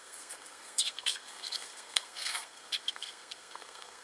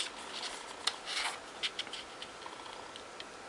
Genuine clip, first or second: second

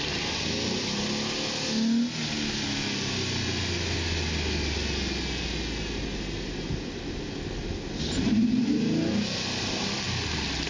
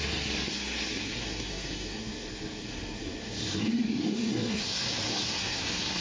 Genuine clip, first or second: first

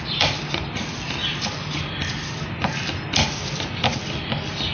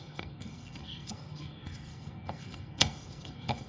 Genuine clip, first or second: first